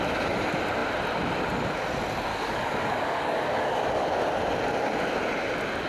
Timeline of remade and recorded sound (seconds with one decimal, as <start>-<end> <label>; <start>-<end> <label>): 0.0-2.3 recorded; 2.3-4.1 remade; 4.1-5.9 recorded